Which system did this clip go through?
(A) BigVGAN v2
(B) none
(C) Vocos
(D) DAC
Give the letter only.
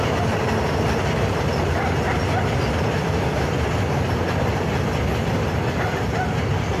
B